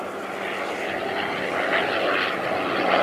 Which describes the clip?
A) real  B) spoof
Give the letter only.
A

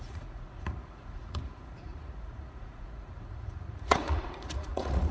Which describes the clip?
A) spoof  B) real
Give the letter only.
A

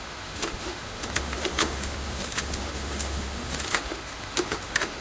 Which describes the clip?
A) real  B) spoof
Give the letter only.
B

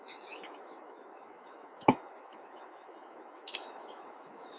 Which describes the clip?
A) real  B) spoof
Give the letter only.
B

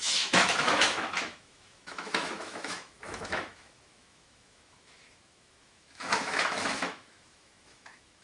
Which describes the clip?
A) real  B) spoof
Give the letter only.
B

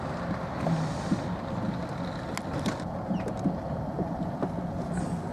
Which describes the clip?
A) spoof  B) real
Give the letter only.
B